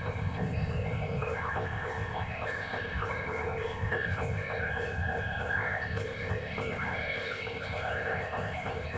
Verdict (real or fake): fake